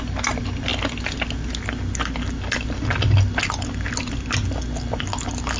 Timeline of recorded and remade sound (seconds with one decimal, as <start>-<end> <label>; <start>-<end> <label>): 0.0-5.6 recorded